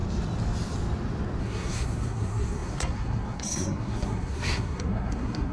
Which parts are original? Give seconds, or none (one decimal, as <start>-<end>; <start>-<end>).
0.0-1.4